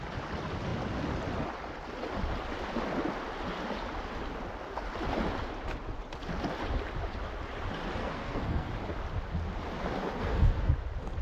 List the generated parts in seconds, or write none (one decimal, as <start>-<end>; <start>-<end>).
8.0-8.7; 10.2-10.7